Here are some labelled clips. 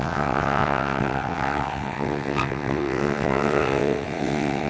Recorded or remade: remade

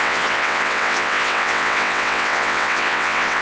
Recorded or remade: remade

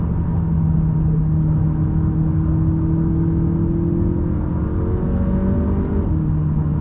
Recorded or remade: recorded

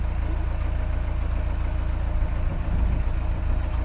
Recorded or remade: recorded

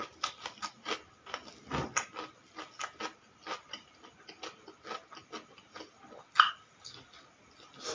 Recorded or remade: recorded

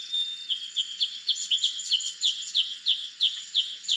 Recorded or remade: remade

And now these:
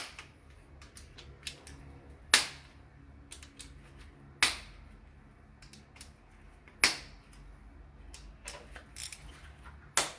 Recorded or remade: recorded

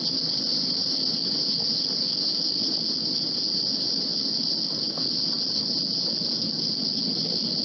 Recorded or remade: recorded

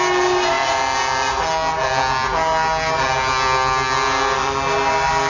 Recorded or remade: recorded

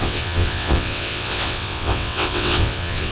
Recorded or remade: remade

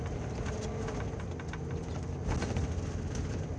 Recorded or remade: recorded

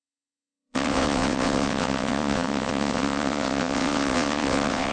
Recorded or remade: remade